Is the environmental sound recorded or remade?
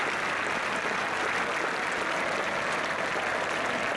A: recorded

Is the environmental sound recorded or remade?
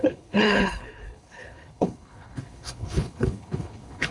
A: remade